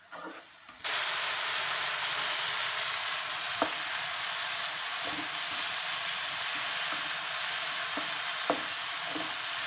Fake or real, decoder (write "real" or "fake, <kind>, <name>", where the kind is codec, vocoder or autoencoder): real